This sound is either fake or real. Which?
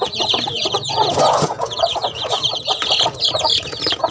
fake